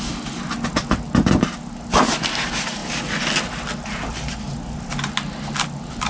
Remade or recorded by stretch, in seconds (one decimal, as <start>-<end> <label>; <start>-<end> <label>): 0.0-6.1 recorded